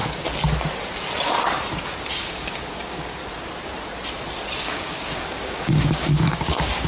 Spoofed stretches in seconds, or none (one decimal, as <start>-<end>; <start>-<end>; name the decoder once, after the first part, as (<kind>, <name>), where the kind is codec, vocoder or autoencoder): 2.1-3.2 (codec, DAC); 4.6-6.9